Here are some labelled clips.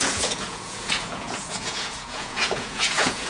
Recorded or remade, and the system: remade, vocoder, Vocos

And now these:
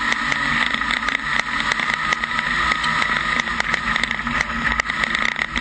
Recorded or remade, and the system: recorded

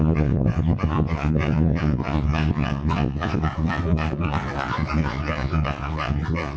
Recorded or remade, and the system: remade, vocoder, Vocos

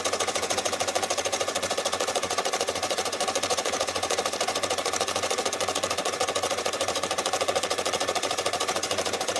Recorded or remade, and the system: remade, vocoder, Vocos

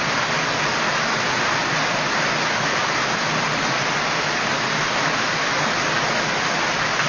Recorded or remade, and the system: recorded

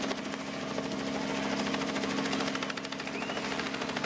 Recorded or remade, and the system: recorded